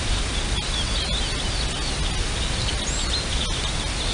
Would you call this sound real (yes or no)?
yes